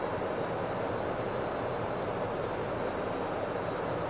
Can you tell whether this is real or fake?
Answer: real